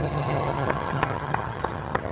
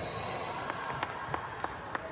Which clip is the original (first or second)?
second